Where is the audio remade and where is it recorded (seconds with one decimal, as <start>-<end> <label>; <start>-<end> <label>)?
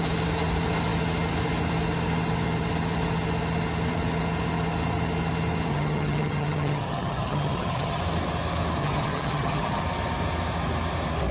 0.0-5.7 recorded; 5.7-8.0 remade; 8.0-8.8 recorded; 8.8-9.8 remade; 9.8-11.3 recorded